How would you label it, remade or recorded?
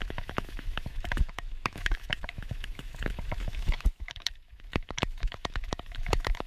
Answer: remade